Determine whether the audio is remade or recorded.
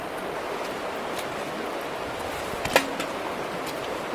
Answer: recorded